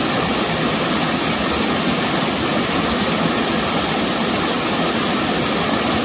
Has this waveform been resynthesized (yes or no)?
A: no